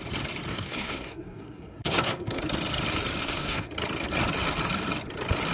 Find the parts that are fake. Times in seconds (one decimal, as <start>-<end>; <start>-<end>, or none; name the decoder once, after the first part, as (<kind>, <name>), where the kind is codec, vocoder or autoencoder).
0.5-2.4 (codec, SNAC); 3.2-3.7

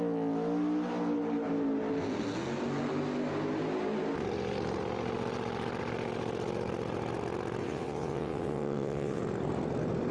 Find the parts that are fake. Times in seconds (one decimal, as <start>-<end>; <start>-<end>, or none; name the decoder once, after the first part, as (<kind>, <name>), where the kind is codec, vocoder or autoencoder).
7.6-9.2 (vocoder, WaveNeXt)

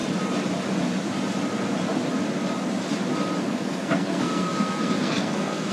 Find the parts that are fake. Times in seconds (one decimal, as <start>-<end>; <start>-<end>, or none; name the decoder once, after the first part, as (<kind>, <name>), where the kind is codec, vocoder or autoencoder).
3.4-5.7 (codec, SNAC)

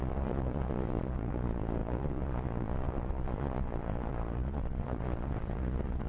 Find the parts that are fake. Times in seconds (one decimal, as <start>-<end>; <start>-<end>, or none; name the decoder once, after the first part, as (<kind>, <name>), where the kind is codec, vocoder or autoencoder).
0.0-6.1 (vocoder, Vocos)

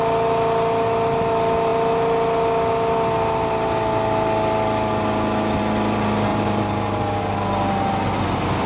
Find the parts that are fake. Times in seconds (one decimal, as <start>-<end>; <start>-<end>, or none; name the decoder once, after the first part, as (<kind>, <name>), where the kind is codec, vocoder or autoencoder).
6.3-7.0 (vocoder, BigVGAN v2)

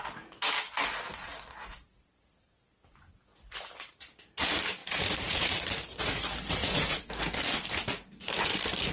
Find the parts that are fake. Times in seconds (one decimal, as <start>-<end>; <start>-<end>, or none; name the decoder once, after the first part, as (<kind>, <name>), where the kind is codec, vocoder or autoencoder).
1.1-1.9 (vocoder, Vocos); 4.8-6.1; 6.6-7.1

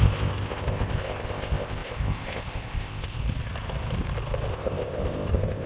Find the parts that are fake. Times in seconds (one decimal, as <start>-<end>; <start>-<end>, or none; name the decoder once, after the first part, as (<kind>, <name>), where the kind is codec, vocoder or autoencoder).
0.0-3.2 (codec, ZipCodec); 4.5-5.7